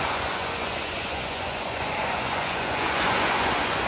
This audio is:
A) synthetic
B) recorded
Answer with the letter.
A